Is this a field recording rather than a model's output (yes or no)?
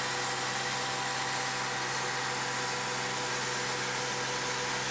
yes